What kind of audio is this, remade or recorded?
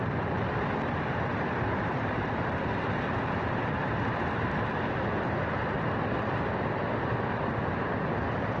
remade